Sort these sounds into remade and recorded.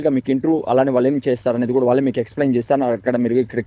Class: remade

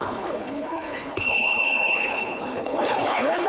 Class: remade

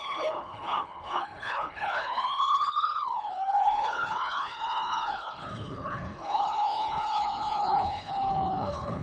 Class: remade